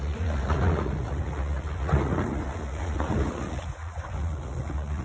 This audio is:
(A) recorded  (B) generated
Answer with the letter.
B